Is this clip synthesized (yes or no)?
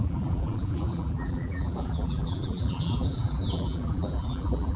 yes